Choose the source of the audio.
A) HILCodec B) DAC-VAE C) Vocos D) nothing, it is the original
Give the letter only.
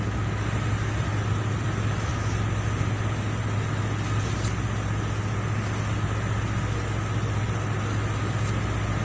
D